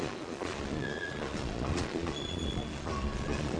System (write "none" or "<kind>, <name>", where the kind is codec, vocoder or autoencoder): vocoder, Vocos